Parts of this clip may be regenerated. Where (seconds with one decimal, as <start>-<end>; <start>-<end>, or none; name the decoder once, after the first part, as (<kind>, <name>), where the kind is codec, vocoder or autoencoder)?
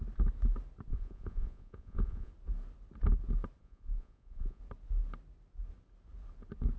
0.9-2.3 (vocoder, Vocos); 3.6-4.6